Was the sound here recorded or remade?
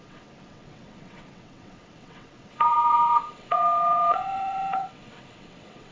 remade